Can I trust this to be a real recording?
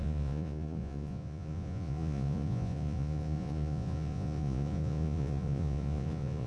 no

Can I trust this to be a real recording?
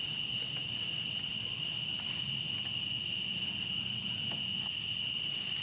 yes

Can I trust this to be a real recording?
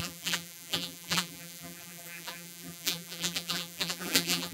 no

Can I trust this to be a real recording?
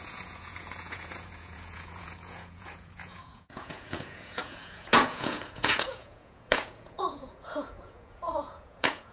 no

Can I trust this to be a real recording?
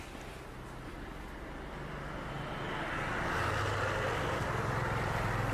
yes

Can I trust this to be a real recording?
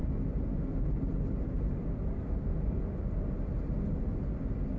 yes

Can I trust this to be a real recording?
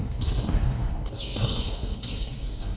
no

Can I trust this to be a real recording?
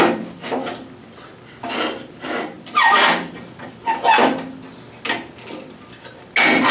yes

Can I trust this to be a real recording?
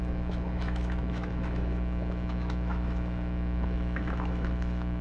no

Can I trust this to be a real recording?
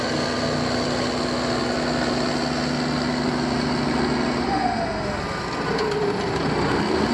yes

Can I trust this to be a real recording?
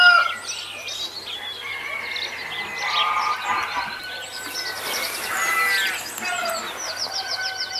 yes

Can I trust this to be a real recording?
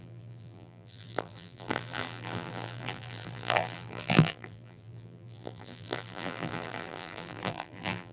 no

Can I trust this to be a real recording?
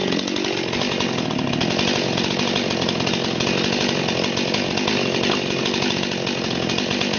yes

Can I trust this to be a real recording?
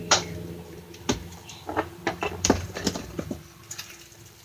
no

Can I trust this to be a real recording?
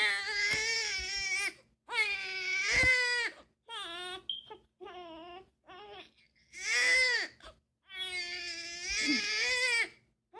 yes